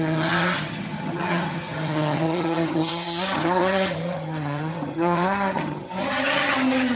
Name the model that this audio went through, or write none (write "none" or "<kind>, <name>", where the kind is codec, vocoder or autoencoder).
vocoder, HiFi-GAN